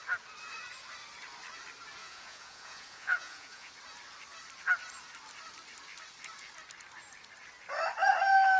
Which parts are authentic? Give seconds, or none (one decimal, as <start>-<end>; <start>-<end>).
0.0-2.0; 3.7-8.6